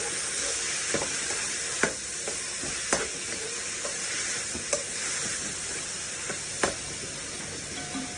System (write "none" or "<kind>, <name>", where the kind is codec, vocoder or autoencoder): none